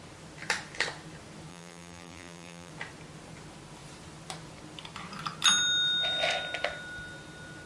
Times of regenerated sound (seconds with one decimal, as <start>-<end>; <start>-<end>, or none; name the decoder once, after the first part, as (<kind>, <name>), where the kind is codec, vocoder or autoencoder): 1.5-2.7 (vocoder, BigVGAN v2)